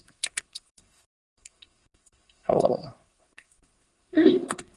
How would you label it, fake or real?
fake